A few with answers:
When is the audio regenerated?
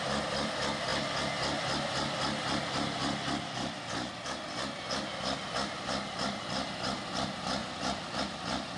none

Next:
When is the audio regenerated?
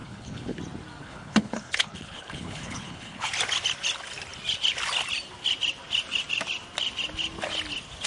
0.0-0.6 (codec, HILCodec); 1.0-3.3